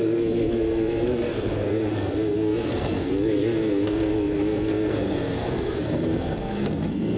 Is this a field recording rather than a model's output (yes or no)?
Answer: no